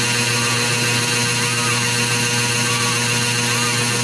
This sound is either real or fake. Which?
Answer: real